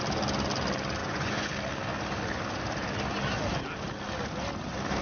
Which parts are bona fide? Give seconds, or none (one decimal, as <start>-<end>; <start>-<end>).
0.0-1.0; 1.5-5.0